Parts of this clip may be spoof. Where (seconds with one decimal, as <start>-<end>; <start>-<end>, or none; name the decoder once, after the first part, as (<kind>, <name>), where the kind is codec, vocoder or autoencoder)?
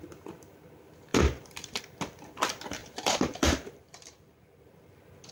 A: 1.1-1.8 (vocoder, BigVGAN v2); 2.8-5.3